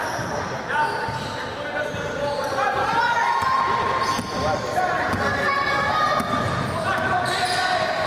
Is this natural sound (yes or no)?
yes